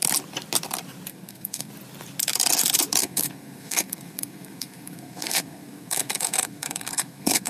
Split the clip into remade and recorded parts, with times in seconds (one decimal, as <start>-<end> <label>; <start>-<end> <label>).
0.0-1.1 recorded; 1.1-1.7 remade; 1.7-3.0 recorded; 3.0-7.5 remade